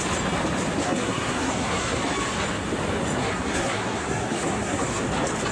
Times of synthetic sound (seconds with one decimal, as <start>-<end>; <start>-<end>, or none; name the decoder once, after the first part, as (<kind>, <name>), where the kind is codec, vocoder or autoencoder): 0.8-2.0 (codec, SNAC); 3.2-5.0